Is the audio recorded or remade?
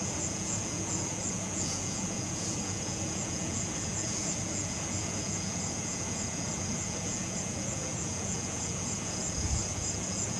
remade